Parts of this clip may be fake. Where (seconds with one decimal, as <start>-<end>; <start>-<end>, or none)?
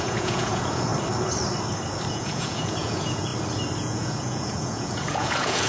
0.0-0.9; 2.1-3.3; 3.8-5.7